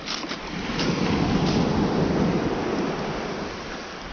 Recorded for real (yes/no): yes